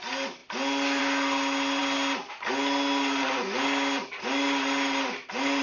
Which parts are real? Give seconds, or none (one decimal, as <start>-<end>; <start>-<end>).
0.0-5.6